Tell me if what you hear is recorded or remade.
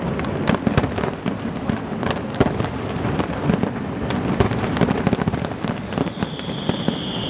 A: recorded